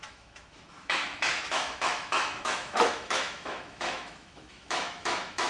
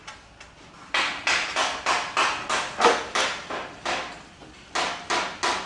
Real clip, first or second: second